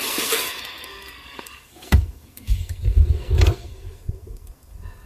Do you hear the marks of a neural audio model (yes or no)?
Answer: yes